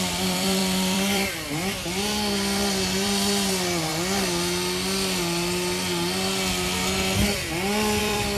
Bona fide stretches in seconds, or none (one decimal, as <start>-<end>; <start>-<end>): 3.9-8.0